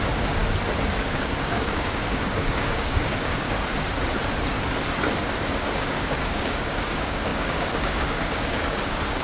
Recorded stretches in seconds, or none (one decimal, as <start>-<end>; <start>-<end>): 0.4-1.0; 3.7-5.5